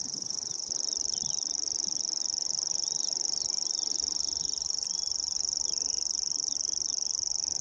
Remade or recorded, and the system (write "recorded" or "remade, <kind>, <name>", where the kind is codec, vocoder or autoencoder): recorded